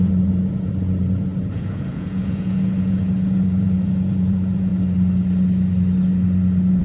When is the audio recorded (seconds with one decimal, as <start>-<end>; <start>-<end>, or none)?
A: 4.7-6.8